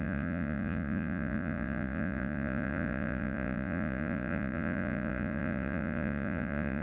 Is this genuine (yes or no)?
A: no